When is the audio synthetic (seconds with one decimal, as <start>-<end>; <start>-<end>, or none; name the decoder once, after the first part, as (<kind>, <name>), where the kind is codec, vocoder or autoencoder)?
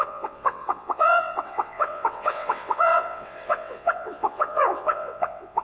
0.0-5.6 (vocoder, WaveNeXt)